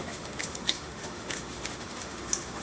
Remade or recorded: remade